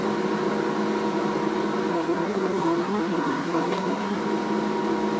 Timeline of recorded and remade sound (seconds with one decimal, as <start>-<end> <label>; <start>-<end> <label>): 0.0-1.9 recorded; 1.9-4.2 remade; 4.2-5.2 recorded

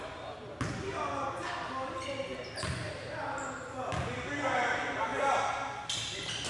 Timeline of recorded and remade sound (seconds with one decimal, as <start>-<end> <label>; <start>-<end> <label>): 0.0-6.5 recorded

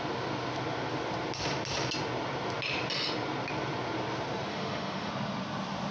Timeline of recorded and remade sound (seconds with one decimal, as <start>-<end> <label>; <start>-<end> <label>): 0.0-4.5 recorded; 4.5-5.1 remade; 5.1-5.9 recorded

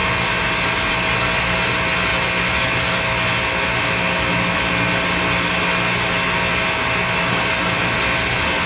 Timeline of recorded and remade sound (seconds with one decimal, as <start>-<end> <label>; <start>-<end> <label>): 0.0-8.7 recorded

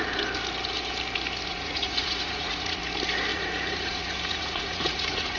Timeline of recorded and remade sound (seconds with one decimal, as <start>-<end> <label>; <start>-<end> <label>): 0.0-1.5 recorded; 1.5-2.8 remade; 2.8-3.3 recorded; 3.3-5.4 remade

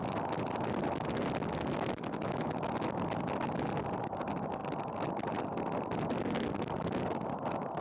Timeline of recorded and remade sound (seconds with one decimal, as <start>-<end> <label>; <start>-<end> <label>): 0.0-7.8 recorded

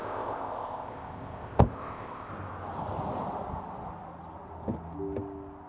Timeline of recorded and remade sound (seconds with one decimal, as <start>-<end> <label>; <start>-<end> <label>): 0.0-2.3 remade; 2.3-5.7 recorded